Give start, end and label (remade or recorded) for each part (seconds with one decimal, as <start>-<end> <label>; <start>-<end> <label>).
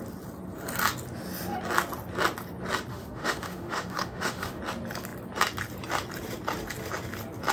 0.0-2.9 recorded; 2.9-4.6 remade; 4.6-7.5 recorded